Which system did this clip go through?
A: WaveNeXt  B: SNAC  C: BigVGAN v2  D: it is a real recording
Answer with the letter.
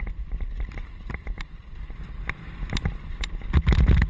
D